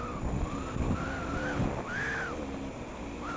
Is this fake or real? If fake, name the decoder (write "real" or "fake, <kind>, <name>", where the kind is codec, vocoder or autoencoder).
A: real